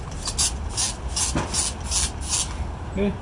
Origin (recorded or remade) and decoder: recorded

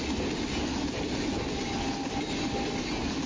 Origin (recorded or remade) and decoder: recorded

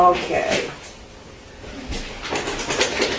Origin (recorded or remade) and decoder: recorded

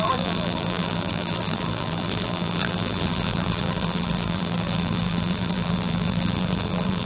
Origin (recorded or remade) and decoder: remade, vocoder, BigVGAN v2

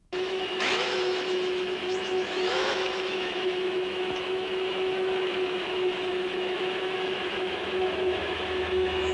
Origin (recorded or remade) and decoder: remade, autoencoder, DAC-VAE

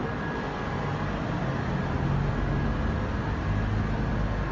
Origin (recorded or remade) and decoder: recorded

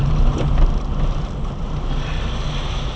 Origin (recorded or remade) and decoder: recorded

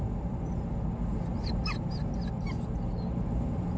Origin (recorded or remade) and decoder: recorded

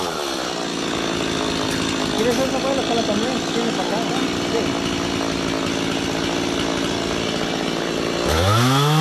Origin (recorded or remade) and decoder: recorded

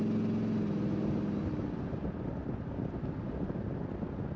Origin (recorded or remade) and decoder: recorded